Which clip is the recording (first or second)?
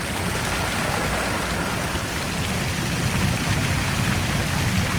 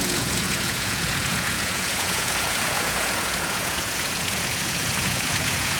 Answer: first